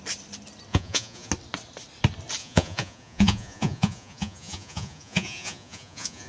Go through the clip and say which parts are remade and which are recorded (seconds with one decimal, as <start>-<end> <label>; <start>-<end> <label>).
0.0-0.7 recorded; 0.7-1.3 remade; 1.3-2.4 recorded; 2.4-6.3 remade